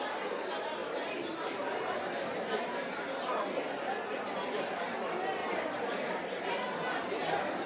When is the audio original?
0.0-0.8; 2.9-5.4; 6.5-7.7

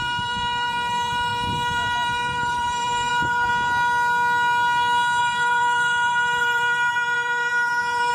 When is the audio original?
3.5-5.2

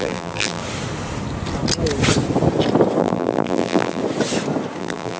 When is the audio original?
0.6-3.0; 4.0-4.8

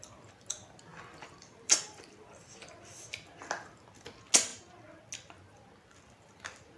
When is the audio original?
0.0-0.9; 3.5-6.8